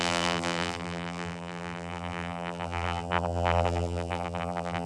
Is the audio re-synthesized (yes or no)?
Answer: yes